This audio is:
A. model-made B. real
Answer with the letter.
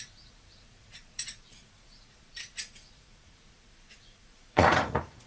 A